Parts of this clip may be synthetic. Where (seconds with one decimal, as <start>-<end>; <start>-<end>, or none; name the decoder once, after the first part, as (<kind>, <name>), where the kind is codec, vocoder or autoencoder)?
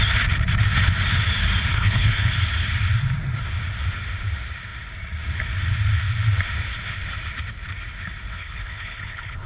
1.7-2.3 (codec, HILCodec); 8.3-9.5